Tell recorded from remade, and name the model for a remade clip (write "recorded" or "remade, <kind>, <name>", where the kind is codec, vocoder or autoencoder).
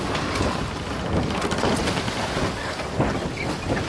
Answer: recorded